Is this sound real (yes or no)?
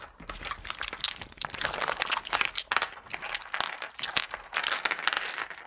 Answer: yes